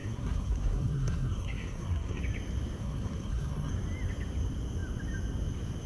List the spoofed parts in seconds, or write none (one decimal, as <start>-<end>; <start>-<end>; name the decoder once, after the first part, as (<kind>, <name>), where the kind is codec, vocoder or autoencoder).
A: 0.0-2.2 (codec, SNAC); 2.8-3.7